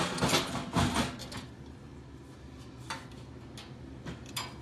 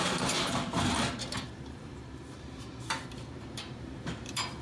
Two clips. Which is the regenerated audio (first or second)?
second